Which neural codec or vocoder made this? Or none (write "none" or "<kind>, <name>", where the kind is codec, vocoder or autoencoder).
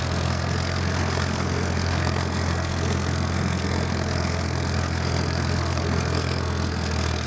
codec, SNAC